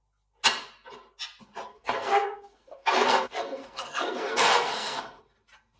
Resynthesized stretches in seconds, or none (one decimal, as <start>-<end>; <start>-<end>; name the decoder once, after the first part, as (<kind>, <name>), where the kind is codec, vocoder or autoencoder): 1.7-5.2 (codec, SNAC)